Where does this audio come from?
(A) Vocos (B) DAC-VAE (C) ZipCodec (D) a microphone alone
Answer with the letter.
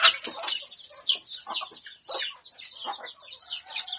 D